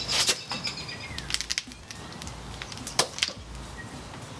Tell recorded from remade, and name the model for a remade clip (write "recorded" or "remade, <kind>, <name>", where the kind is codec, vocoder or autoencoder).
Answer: recorded